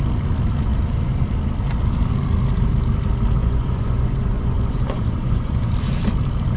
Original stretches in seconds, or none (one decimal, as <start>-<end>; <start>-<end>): 0.0-3.4; 5.7-6.6